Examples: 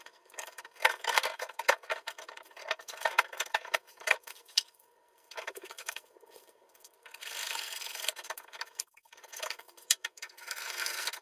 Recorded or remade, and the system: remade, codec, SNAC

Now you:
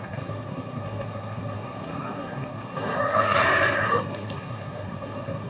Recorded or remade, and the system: remade, codec, SNAC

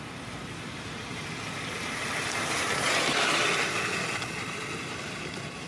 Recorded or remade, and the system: recorded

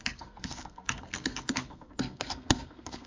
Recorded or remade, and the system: remade, codec, SNAC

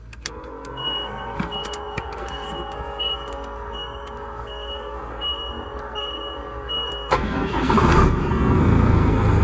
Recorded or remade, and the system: remade, codec, SNAC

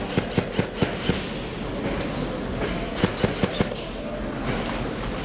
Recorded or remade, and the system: recorded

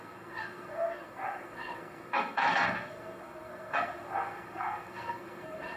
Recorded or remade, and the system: remade, codec, SNAC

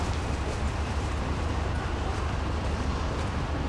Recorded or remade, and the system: recorded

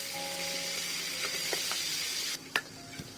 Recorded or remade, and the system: recorded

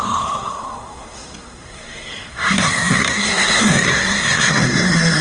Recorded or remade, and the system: remade, codec, SNAC